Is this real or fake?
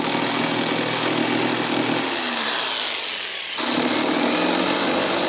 real